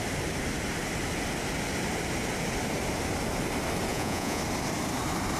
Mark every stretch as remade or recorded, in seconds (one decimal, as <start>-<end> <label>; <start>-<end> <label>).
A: 0.0-3.9 recorded; 3.9-4.4 remade; 4.4-5.4 recorded